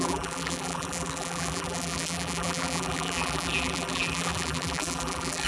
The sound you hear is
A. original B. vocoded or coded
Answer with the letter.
B